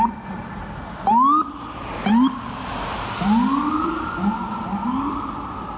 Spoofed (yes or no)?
no